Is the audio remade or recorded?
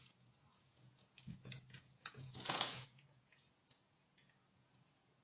remade